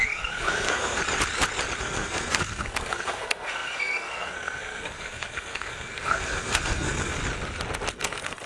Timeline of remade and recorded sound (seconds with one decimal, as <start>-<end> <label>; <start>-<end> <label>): 0.0-1.0 remade; 1.0-1.8 recorded; 1.8-7.2 remade; 7.2-7.9 recorded; 7.9-8.5 remade